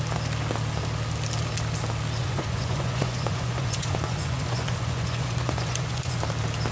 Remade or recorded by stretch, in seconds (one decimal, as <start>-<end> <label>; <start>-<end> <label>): 0.0-2.2 recorded; 2.2-6.2 remade; 6.2-6.7 recorded